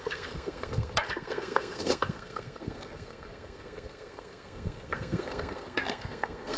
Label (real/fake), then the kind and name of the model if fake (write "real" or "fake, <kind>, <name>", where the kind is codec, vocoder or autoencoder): fake, codec, SNAC